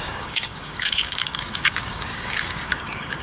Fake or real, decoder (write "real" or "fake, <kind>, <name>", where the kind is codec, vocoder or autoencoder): fake, codec, DAC